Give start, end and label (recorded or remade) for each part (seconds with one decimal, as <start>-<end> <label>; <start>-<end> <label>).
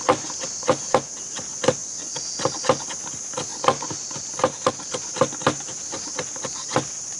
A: 0.0-7.2 recorded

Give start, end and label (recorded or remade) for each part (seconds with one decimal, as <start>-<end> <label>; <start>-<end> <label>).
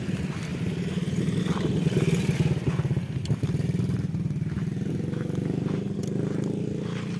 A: 0.0-7.2 recorded